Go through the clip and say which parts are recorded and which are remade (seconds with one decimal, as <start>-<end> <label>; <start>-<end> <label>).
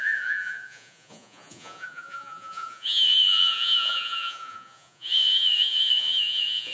0.0-6.7 remade